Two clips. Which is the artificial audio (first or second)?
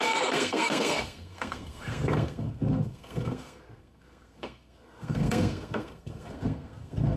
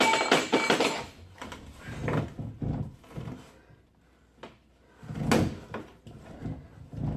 first